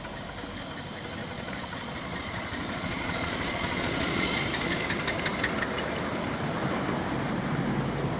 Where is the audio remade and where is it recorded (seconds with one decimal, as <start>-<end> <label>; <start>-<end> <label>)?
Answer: 0.0-1.2 recorded; 1.2-4.4 remade; 4.4-8.2 recorded